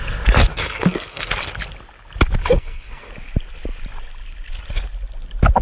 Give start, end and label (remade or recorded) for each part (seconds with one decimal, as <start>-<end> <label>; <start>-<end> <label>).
0.0-0.5 recorded; 0.5-1.3 remade; 1.3-2.4 recorded; 2.4-3.1 remade; 3.1-5.6 recorded